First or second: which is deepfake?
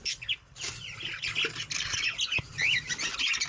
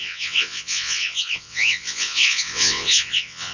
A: second